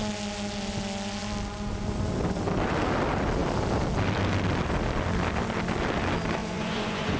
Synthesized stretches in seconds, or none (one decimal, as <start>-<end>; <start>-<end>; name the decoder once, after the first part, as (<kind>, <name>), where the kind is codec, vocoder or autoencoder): 6.4-7.2 (vocoder, Vocos)